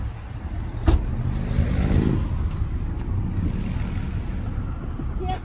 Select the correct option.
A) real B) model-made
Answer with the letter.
A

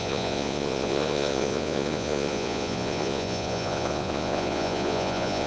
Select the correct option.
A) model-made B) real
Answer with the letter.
A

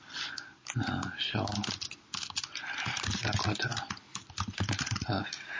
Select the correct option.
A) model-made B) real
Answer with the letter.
B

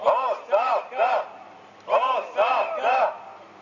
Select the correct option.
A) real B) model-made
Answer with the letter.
A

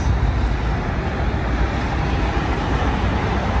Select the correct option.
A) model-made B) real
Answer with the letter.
B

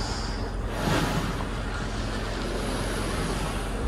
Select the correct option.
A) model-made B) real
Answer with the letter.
B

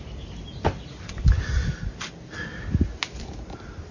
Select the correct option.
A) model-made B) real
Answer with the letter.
B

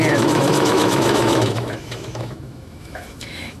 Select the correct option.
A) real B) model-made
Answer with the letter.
B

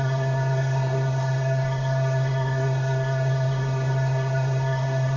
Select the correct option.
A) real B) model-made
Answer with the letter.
B